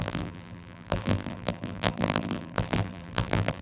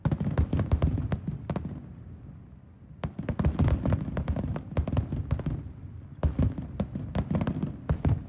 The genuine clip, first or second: second